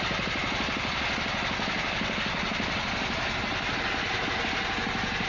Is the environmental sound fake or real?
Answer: real